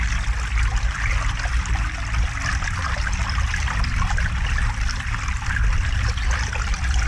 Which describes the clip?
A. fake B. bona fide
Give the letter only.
B